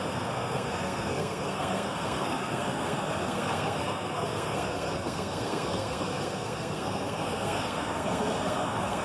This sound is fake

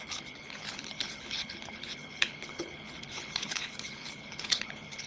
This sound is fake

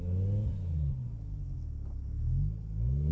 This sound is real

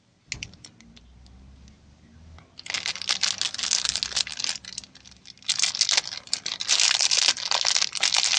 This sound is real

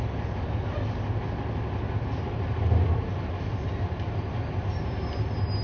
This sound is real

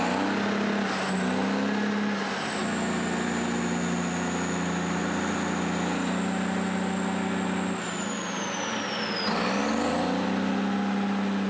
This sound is real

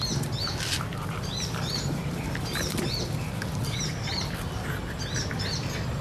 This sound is real